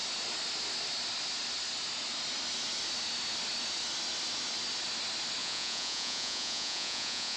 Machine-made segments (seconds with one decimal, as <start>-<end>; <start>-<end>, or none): 5.4-7.4